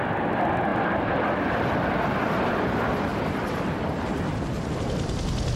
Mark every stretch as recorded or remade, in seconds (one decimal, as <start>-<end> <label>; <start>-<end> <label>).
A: 0.0-0.7 recorded; 0.7-2.7 remade; 2.7-3.1 recorded; 3.1-4.8 remade; 4.8-5.6 recorded